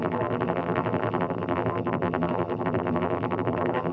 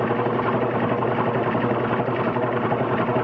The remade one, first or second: first